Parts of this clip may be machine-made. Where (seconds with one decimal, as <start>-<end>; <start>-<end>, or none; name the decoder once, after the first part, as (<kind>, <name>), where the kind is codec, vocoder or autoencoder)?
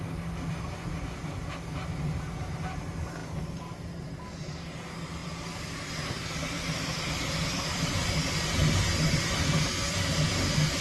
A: 0.9-1.7 (vocoder, BigVGAN v2); 5.2-10.1